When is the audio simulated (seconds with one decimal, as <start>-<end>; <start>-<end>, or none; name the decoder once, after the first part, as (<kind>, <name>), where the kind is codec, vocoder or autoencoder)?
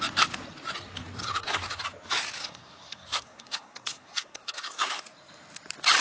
1.2-1.8 (codec, SNAC); 2.4-5.0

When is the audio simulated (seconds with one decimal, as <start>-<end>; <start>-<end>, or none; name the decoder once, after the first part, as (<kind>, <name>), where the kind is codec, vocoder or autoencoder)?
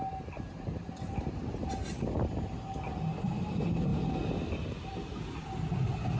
none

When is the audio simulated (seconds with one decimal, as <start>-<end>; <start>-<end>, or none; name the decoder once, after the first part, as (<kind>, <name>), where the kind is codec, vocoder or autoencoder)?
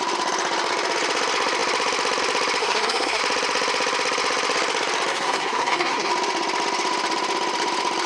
2.6-3.2 (codec, SNAC); 5.1-6.1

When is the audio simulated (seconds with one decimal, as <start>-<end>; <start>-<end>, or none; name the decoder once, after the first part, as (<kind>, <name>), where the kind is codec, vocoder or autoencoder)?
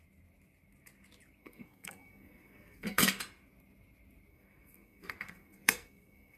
1.4-3.2 (codec, SNAC); 4.3-6.4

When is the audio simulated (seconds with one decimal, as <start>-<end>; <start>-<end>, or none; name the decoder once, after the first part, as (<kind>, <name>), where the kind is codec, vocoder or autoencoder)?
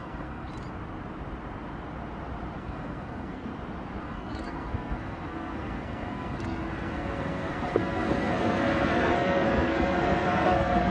0.0-0.5 (codec, SNAC); 2.6-3.5; 4.0-10.9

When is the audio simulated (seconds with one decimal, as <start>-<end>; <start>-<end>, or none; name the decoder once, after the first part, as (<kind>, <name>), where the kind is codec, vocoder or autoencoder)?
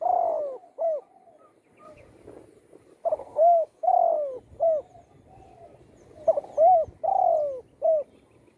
3.2-3.9 (codec, SNAC)